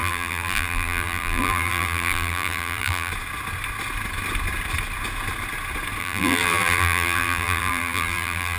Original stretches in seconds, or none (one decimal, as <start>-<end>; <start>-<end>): 3.1-6.0